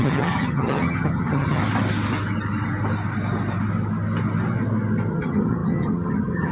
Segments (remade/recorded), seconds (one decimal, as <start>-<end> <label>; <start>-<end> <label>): 0.0-1.6 remade; 1.6-5.1 recorded; 5.1-6.5 remade